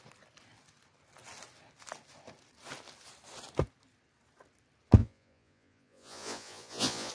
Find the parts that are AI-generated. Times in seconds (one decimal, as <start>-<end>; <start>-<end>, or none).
5.0-7.1